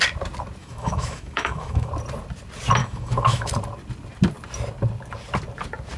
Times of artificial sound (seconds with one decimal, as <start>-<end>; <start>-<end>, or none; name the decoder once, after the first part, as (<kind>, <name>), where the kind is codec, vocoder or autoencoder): 0.6-1.9 (autoencoder, DAC-VAE); 2.8-3.5